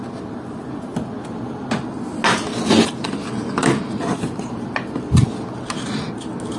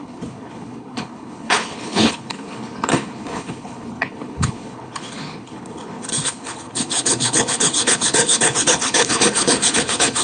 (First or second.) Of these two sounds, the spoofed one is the second